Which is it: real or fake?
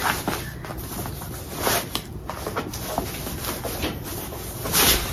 real